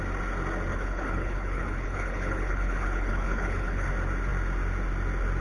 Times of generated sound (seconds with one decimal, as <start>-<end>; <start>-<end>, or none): 0.7-3.9